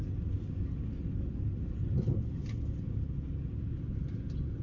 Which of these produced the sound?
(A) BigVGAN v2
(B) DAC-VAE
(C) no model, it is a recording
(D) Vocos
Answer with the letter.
C